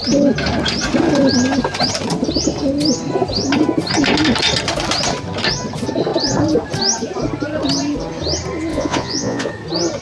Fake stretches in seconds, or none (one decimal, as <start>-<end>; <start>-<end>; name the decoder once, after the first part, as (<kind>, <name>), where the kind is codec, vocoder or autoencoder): 8.7-9.5 (vocoder, Vocos)